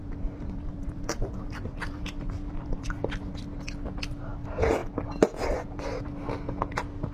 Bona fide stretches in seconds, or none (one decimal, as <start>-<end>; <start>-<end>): 3.0-7.1